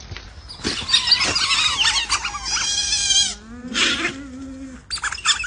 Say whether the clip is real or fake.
real